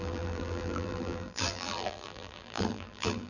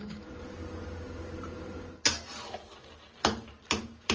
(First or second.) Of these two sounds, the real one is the second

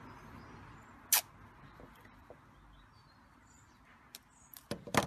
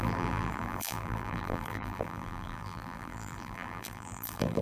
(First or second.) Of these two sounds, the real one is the first